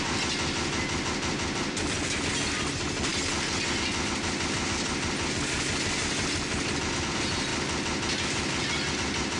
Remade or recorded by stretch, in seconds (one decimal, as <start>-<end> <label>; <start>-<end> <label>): 0.0-9.4 recorded